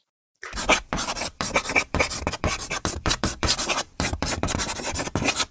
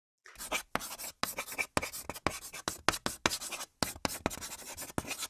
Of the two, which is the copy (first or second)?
first